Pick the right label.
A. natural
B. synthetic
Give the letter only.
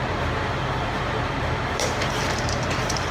B